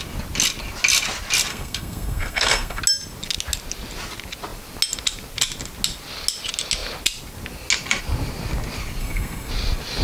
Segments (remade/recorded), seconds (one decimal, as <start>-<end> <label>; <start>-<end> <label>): 0.0-1.5 recorded; 1.5-2.8 remade; 2.8-9.0 recorded; 9.0-9.5 remade; 9.5-10.0 recorded

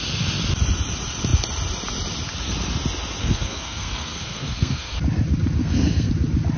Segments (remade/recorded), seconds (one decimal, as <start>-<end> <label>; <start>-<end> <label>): 0.0-3.2 recorded; 3.2-5.0 remade; 5.0-5.6 recorded; 5.6-6.1 remade; 6.1-6.6 recorded

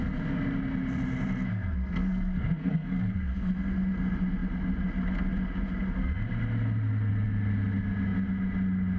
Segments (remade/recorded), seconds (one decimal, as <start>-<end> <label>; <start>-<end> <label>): 0.0-1.5 recorded; 1.5-3.5 remade; 3.5-9.0 recorded